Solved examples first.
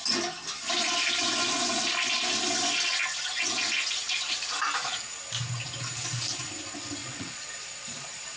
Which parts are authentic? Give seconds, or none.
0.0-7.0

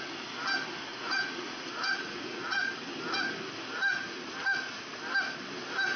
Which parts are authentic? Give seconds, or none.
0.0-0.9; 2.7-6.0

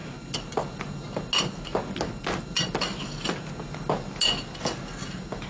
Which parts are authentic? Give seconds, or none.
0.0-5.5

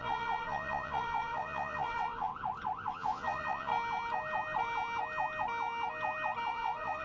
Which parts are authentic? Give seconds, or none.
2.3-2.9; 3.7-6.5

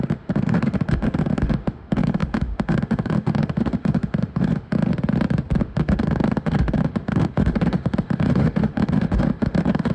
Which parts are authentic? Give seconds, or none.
4.9-5.6